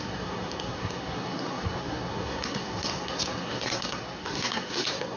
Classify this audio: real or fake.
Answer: fake